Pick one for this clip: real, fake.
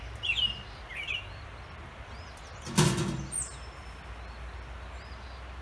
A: real